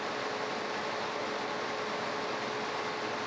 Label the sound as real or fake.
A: real